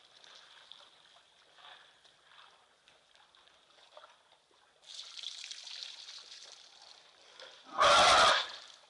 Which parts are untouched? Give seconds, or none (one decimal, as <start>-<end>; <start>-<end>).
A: 0.0-8.9